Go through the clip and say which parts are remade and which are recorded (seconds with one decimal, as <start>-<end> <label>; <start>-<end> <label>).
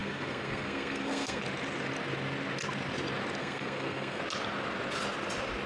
0.0-1.4 remade; 1.4-3.4 recorded; 3.4-4.2 remade; 4.2-5.7 recorded